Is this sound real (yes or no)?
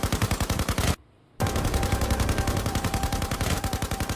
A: no